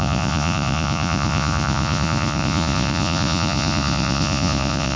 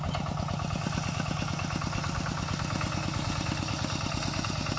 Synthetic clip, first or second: first